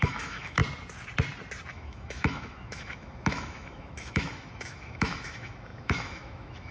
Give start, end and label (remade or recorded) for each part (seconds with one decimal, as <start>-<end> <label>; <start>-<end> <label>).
0.0-0.6 remade; 0.6-1.7 recorded; 1.7-6.7 remade